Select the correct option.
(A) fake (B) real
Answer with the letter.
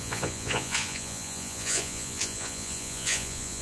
A